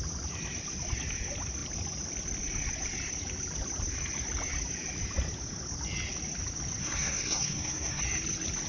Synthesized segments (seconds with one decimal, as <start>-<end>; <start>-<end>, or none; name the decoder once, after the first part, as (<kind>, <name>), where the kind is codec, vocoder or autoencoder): 6.8-8.0 (codec, SNAC)

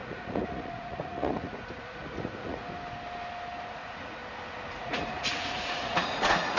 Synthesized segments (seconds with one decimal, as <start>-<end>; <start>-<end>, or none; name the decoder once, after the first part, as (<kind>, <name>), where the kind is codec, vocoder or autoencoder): 0.0-2.6 (vocoder, Vocos); 3.7-4.2; 4.7-6.6

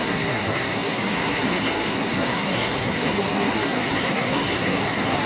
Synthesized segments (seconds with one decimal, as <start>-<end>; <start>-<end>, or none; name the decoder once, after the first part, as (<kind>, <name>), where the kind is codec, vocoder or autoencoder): 0.0-5.3 (codec, SNAC)

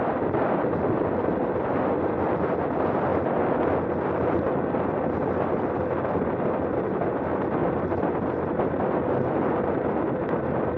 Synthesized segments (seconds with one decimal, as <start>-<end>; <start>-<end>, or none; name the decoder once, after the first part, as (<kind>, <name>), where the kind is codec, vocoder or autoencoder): none